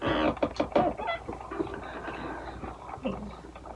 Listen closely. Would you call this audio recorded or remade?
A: recorded